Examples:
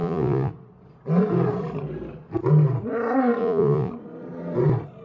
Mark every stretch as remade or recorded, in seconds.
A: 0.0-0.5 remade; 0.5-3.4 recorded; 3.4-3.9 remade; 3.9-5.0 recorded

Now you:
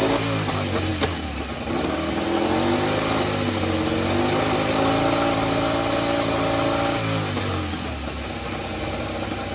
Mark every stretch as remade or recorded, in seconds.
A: 0.0-9.5 recorded

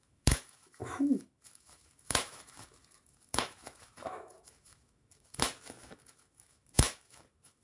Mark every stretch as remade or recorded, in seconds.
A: 0.0-7.6 remade

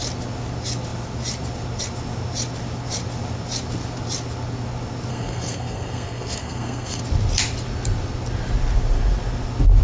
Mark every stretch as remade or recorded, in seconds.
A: 0.0-5.1 recorded; 5.1-7.0 remade; 7.0-9.8 recorded

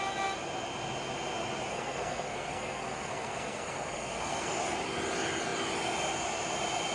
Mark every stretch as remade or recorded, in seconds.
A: 0.0-1.7 recorded; 1.7-4.6 remade; 4.6-6.9 recorded

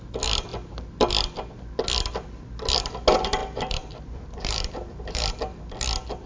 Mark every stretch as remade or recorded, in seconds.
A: 0.0-3.4 recorded; 3.4-5.3 remade; 5.3-6.3 recorded

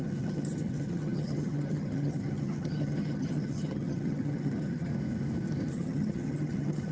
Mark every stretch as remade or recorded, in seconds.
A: 0.0-4.9 remade; 4.9-5.7 recorded; 5.7-6.9 remade